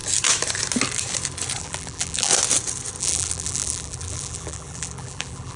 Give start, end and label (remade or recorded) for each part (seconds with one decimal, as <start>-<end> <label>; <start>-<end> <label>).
0.0-1.6 recorded; 1.6-2.3 remade; 2.3-3.0 recorded; 3.0-5.6 remade